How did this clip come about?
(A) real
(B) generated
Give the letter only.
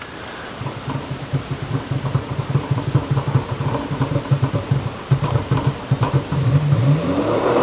B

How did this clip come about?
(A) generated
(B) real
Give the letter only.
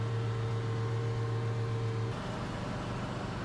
B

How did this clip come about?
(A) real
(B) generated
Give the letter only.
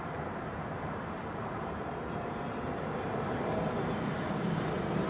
B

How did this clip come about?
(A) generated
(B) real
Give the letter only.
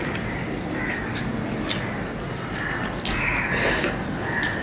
B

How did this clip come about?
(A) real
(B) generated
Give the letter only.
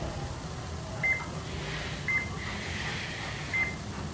A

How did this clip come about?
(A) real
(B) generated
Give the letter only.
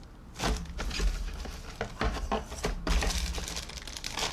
A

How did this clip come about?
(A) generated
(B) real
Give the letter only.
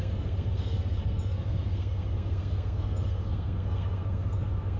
A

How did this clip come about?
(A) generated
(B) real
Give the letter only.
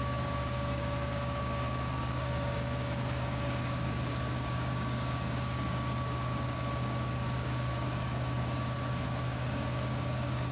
A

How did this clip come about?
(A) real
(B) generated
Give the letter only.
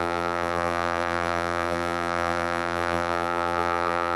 B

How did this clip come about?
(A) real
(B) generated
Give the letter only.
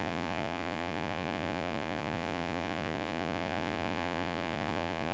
B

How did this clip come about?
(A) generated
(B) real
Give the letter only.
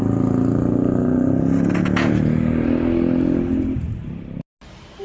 B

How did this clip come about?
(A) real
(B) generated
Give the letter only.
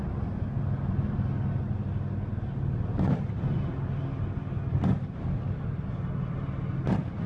A